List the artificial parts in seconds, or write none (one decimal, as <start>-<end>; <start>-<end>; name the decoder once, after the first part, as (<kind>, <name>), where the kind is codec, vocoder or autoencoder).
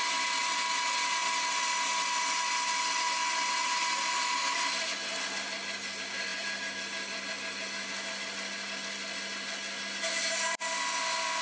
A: none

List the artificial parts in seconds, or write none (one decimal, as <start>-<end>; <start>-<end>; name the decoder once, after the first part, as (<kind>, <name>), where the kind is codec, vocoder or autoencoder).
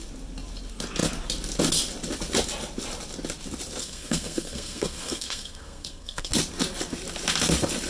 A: 3.8-6.3 (codec, SNAC)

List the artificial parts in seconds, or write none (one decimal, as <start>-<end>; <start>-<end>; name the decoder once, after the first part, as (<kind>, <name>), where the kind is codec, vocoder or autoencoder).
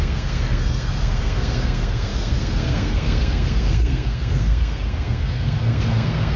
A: 0.0-6.4 (codec, SNAC)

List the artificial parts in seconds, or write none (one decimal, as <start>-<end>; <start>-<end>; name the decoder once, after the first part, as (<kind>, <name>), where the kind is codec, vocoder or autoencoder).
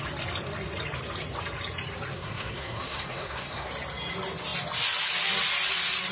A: 2.1-3.7 (codec, SNAC)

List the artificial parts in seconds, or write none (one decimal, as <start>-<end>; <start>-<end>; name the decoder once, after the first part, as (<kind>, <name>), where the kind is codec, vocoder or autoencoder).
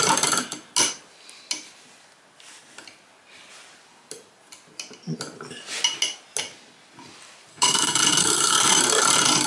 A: 7.5-8.8 (codec, SNAC)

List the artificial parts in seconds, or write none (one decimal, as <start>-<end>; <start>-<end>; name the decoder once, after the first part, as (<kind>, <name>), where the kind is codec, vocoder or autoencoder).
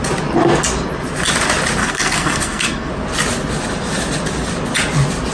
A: 1.8-2.9 (codec, SNAC)